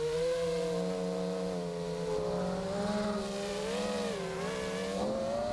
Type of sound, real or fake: real